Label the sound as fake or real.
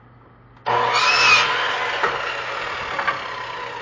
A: real